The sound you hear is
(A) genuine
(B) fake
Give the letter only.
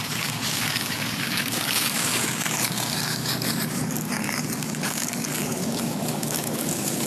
B